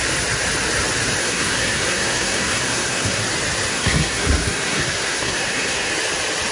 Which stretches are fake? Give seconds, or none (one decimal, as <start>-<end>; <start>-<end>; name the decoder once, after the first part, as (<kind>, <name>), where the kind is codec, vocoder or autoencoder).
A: 1.2-3.2 (codec, SNAC); 3.7-5.9